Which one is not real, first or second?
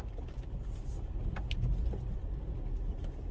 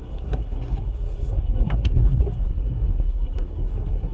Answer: second